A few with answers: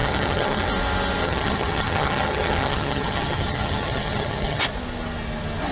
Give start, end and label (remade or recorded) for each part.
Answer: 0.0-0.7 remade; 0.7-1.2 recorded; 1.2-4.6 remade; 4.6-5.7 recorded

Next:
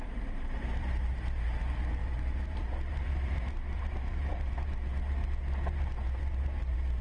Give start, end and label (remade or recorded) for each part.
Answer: 0.0-5.2 remade; 5.2-5.7 recorded; 5.7-7.0 remade

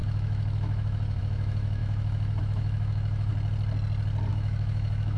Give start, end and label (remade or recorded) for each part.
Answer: 0.0-3.3 remade; 3.3-4.3 recorded; 4.3-5.2 remade

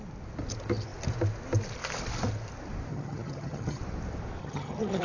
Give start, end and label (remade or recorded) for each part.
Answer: 0.0-2.9 recorded; 2.9-3.8 remade; 3.8-4.4 recorded; 4.4-5.0 remade